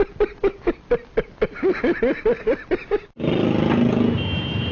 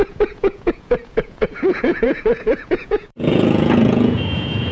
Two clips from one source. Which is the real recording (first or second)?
first